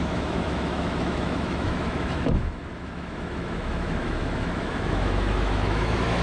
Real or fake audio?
fake